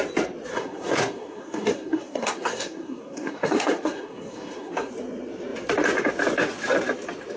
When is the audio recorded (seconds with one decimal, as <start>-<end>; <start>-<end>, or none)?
0.0-0.5; 4.9-7.4